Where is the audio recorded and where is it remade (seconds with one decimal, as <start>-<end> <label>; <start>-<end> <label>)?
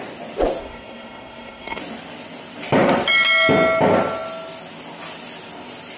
0.0-0.6 recorded; 0.6-1.8 remade; 1.8-6.0 recorded